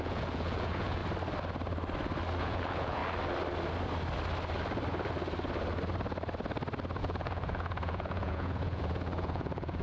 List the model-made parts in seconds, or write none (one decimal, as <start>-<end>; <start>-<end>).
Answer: 0.0-1.0; 2.4-3.0; 7.0-9.8